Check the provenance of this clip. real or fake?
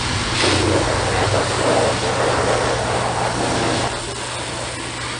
real